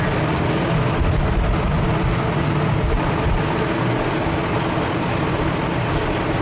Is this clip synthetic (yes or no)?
no